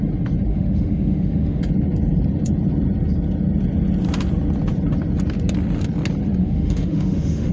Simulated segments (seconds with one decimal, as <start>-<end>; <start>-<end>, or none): 0.5-1.6; 6.4-7.5